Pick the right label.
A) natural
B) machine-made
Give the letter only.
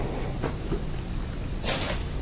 A